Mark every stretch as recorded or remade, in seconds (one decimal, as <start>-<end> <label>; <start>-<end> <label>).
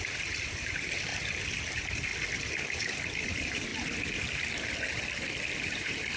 0.0-1.1 remade; 1.1-1.7 recorded; 1.7-2.1 remade; 2.1-3.2 recorded; 3.2-3.7 remade; 3.7-5.6 recorded; 5.6-6.2 remade